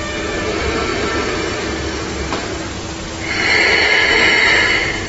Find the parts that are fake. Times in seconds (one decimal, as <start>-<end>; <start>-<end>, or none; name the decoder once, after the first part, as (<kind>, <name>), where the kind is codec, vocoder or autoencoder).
none